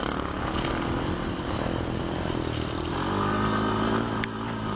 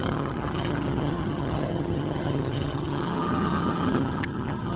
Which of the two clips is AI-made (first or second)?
second